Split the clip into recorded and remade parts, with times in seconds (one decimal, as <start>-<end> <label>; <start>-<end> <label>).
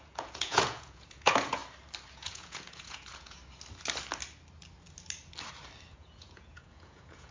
0.0-1.6 remade; 1.6-2.1 recorded; 2.1-3.4 remade; 3.4-5.9 recorded; 5.9-7.3 remade